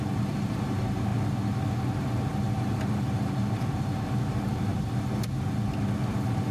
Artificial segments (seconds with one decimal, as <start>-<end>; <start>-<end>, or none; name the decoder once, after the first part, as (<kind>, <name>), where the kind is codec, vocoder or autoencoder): 0.0-1.1 (vocoder, BigVGAN v2); 2.1-4.7